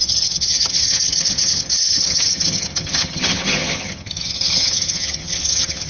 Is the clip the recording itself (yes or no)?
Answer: no